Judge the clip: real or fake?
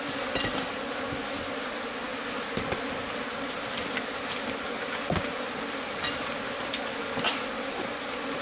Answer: real